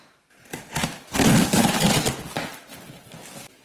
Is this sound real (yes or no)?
yes